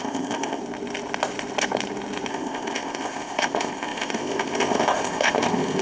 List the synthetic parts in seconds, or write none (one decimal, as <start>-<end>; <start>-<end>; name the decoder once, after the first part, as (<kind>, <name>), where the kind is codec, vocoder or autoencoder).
0.0-0.6 (codec, ZipCodec); 2.3-5.8